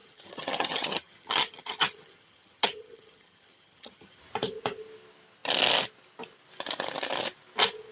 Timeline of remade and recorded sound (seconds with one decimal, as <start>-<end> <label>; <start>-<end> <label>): 0.0-4.2 remade; 4.2-7.9 recorded